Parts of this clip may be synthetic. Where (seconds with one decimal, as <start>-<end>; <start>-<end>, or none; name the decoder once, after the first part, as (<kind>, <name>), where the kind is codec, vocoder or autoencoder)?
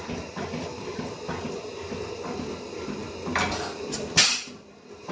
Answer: none